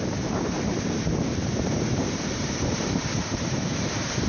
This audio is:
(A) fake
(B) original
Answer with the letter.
A